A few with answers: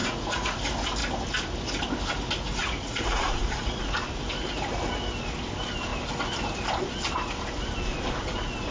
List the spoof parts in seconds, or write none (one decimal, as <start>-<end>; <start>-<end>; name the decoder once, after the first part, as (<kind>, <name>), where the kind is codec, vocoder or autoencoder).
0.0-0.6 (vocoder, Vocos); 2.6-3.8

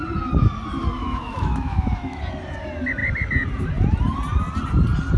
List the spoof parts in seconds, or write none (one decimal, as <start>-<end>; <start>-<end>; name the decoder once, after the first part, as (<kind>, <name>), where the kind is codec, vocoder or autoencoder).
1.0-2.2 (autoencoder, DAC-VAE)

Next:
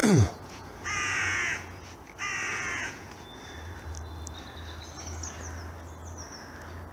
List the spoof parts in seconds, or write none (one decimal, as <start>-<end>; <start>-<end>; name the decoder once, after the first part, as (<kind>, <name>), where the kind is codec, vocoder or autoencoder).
0.0-1.8 (vocoder, Vocos); 2.5-3.4

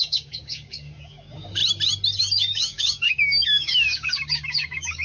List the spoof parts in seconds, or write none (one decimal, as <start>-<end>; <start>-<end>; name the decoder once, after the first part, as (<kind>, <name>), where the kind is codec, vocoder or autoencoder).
0.0-1.6 (codec, DAC); 2.2-5.0